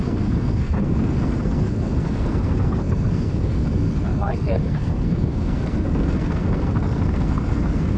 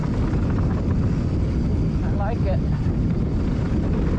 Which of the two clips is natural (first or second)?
second